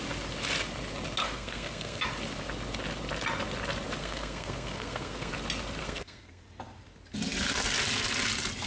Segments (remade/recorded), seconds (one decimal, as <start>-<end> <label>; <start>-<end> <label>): 0.0-1.2 recorded; 1.2-2.0 remade; 2.0-4.0 recorded; 4.0-5.3 remade; 5.3-5.8 recorded; 5.8-6.4 remade; 6.4-8.7 recorded